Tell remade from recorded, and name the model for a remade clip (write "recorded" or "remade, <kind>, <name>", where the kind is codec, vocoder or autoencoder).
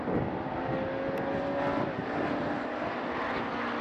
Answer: recorded